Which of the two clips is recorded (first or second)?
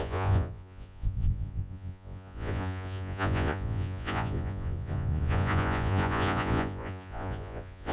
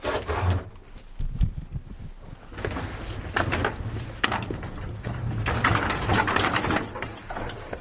second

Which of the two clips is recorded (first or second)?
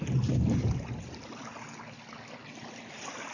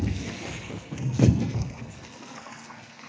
first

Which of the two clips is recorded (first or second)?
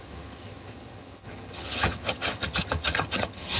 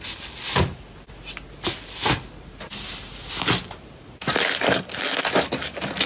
second